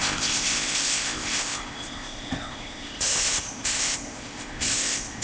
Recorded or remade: remade